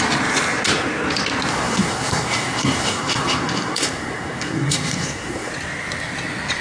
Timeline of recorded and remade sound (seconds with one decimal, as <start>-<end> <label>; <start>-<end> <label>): 0.0-1.5 recorded; 1.5-5.5 remade; 5.5-6.6 recorded